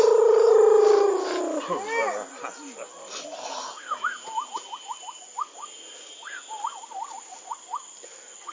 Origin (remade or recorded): recorded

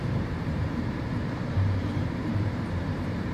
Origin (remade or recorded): remade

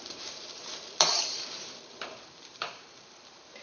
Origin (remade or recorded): remade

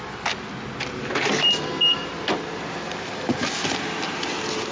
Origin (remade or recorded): recorded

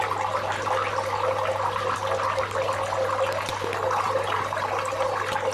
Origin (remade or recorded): recorded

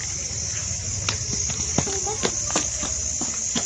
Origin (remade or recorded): recorded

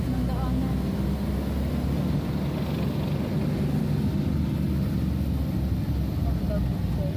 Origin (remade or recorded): recorded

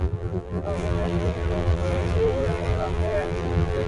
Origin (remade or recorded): remade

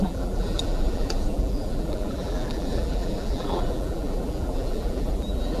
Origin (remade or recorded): remade